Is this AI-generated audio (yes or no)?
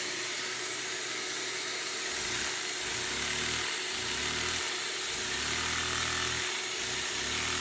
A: no